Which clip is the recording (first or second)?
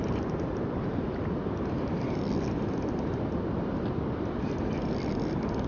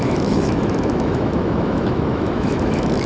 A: first